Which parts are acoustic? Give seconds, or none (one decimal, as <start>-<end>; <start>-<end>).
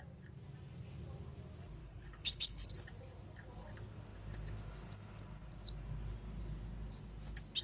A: 0.0-1.8; 2.7-7.6